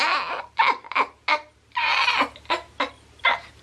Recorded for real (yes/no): yes